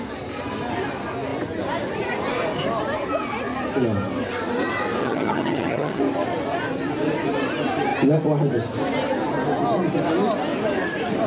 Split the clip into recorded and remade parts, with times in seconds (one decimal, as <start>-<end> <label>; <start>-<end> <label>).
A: 0.0-5.0 recorded; 5.0-6.0 remade; 6.0-11.3 recorded